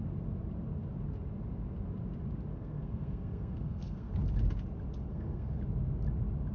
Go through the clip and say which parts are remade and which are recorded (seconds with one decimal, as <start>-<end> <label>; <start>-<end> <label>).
0.0-2.5 recorded; 2.5-4.1 remade; 4.1-5.1 recorded; 5.1-5.6 remade; 5.6-6.5 recorded